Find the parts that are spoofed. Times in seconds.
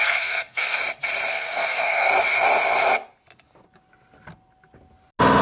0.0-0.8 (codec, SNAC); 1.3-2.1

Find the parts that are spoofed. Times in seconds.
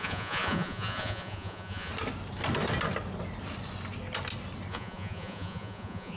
0.0-1.9 (vocoder, Vocos); 4.7-6.2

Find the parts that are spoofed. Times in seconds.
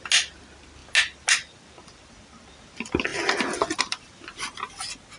none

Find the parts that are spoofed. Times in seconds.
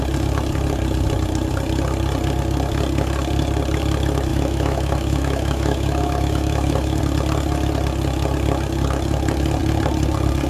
4.3-7.0 (autoencoder, DAC-VAE)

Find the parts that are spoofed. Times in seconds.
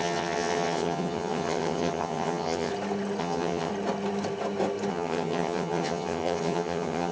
0.0-2.7 (vocoder, HiFi-GAN); 3.2-3.7; 4.9-7.1